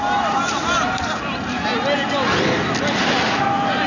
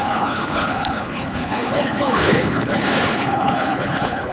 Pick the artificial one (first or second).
second